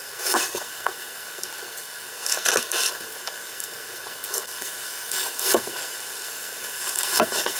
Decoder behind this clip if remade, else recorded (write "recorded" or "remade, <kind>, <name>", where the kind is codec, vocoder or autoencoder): remade, codec, SNAC